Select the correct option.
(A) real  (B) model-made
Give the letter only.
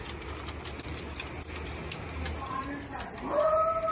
A